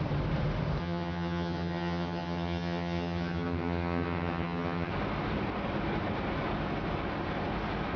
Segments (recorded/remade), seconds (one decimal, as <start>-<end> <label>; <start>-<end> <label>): 0.0-0.8 recorded; 0.8-4.9 remade; 4.9-8.0 recorded